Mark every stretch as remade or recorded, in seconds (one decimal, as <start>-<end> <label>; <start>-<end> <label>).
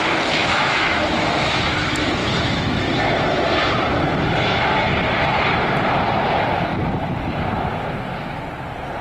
0.0-0.4 recorded; 0.4-1.6 remade; 1.6-2.2 recorded; 2.2-2.8 remade; 2.8-9.0 recorded